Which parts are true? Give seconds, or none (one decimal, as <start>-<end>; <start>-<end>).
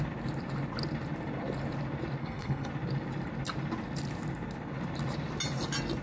0.0-2.2; 2.7-6.0